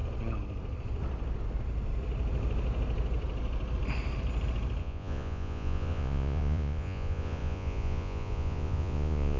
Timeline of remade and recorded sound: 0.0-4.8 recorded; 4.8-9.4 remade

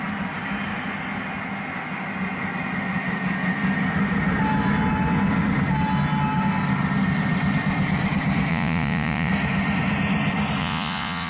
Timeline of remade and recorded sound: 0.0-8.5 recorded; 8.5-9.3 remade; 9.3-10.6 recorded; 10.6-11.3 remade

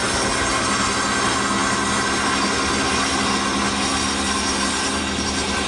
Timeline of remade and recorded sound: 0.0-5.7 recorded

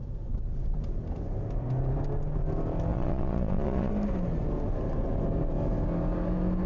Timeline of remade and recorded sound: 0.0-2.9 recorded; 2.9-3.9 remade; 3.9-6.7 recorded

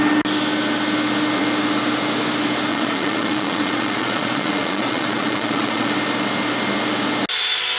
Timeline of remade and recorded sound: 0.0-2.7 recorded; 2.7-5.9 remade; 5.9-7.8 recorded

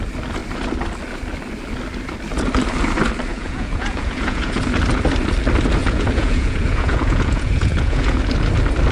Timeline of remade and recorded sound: 0.0-3.3 recorded; 3.3-4.5 remade; 4.5-5.8 recorded; 5.8-8.2 remade; 8.2-8.9 recorded